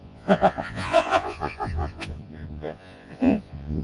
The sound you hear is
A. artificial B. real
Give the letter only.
A